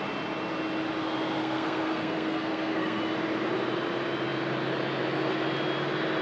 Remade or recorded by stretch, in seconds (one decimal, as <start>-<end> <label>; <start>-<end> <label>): 0.0-1.4 recorded; 1.4-3.0 remade; 3.0-6.2 recorded